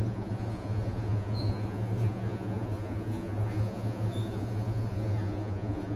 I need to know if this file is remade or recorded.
remade